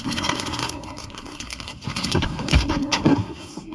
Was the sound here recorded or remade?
remade